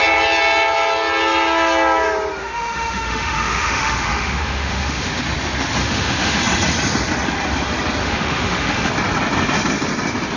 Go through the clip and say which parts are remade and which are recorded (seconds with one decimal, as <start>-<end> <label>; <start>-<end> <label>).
0.0-2.4 recorded; 2.4-5.2 remade; 5.2-5.8 recorded; 5.8-6.4 remade; 6.4-8.0 recorded; 8.0-8.9 remade; 8.9-10.4 recorded